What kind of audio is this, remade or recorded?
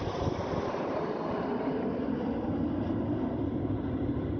recorded